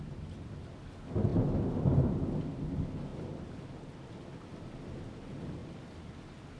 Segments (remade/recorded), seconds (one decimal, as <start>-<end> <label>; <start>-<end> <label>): 0.0-6.6 recorded